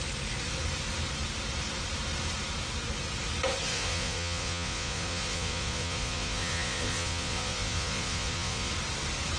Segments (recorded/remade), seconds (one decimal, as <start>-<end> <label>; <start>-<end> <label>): 0.0-3.7 recorded; 3.7-8.7 remade; 8.7-9.4 recorded